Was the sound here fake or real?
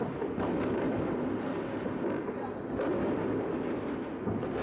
real